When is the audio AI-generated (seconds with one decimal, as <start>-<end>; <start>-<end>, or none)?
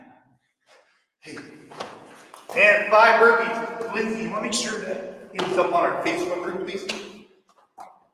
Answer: 0.0-2.5; 4.6-8.1